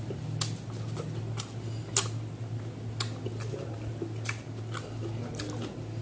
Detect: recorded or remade recorded